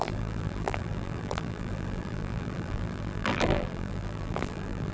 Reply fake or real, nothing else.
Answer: fake